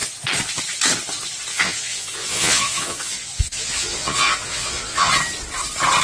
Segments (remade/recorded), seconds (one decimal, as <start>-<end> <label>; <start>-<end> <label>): 0.0-1.5 recorded; 1.5-5.1 remade; 5.1-6.0 recorded